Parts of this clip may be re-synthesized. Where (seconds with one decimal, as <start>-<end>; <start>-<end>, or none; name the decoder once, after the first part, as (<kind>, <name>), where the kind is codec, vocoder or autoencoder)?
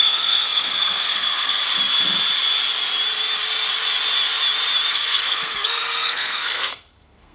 0.0-1.6 (codec, SNAC); 4.9-7.3